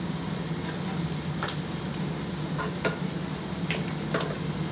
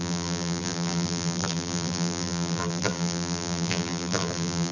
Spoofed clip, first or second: second